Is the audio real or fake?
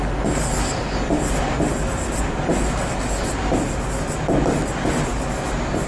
real